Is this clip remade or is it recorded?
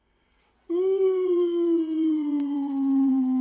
remade